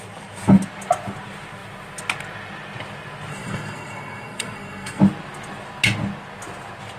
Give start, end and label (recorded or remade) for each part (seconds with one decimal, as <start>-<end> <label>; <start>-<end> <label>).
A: 0.0-3.3 recorded; 3.3-5.0 remade; 5.0-7.0 recorded